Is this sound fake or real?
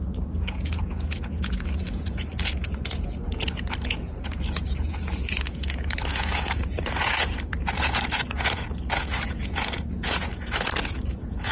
fake